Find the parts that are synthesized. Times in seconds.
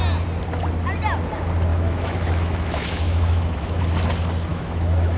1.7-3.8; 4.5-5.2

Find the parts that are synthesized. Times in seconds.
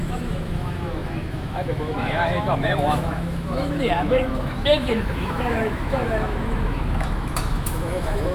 0.0-8.3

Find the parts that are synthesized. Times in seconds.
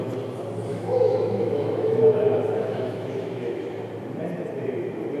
0.7-3.7